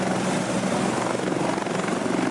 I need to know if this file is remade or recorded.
recorded